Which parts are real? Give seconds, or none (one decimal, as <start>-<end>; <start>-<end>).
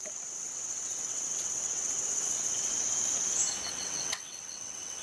2.7-3.7